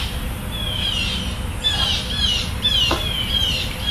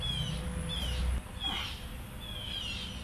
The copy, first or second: first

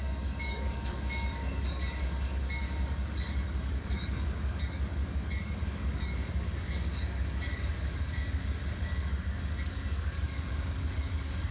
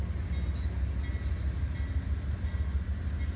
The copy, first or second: first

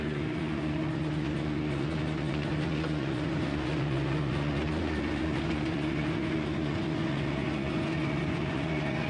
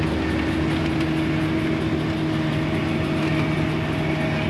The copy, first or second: first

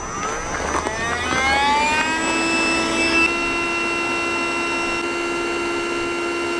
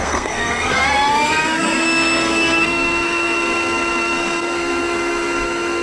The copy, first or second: second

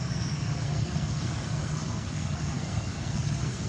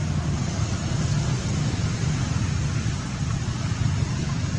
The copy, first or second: first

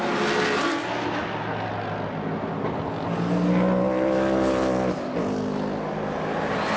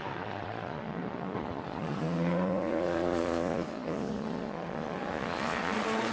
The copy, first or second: second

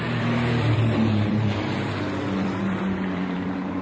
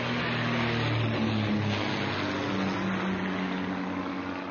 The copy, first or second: first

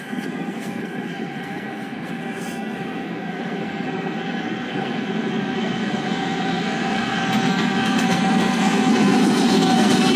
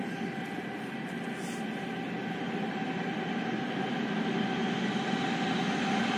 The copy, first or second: first